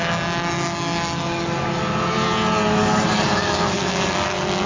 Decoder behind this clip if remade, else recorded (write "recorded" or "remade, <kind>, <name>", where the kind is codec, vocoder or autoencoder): recorded